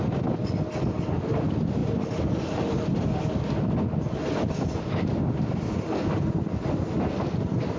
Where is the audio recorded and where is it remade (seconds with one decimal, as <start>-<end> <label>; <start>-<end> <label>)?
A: 0.0-7.8 recorded